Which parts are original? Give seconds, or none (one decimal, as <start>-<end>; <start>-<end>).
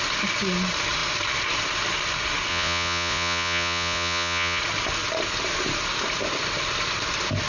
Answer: 0.0-2.5; 4.6-7.5